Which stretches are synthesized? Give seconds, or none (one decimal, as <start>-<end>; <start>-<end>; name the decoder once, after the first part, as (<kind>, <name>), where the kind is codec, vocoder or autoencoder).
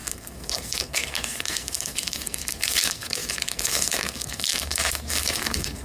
0.0-5.8 (codec, SNAC)